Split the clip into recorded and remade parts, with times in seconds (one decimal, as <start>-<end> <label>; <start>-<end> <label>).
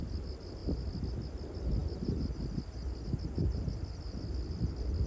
0.0-5.1 recorded